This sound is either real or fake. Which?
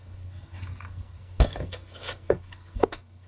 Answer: fake